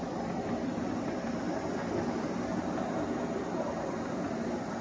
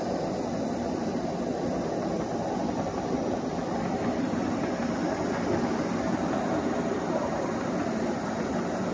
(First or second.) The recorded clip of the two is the first